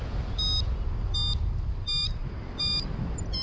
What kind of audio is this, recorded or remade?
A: recorded